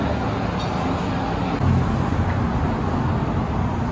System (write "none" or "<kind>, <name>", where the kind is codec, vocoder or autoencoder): none